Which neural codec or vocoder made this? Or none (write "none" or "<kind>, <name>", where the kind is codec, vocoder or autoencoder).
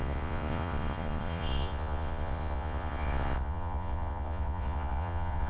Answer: vocoder, Vocos